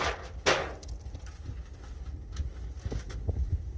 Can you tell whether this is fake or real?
real